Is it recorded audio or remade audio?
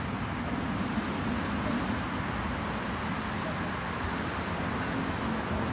recorded